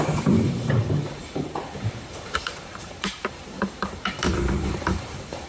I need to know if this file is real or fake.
fake